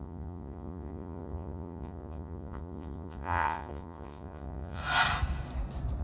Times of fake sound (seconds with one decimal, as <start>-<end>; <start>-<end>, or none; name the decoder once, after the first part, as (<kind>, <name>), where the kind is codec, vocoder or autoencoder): 0.0-4.8 (vocoder, Vocos)